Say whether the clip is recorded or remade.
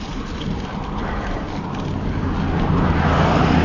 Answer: recorded